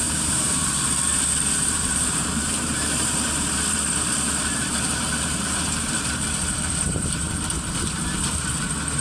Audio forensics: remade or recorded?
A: remade